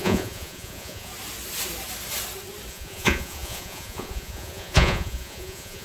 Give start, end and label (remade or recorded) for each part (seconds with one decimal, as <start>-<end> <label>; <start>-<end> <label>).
0.0-1.1 remade; 1.1-2.7 recorded; 2.7-5.8 remade